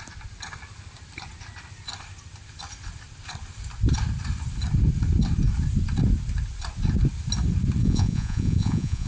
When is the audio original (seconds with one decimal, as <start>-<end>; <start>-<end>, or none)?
0.0-7.8